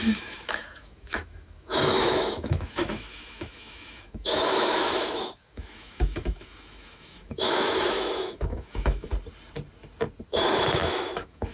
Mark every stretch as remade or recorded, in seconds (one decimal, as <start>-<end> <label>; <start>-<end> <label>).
0.0-9.1 remade; 9.1-10.3 recorded; 10.3-11.5 remade